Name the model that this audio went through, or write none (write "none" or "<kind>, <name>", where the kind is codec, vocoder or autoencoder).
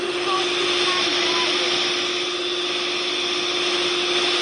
none